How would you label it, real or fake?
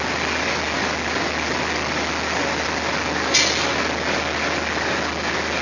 real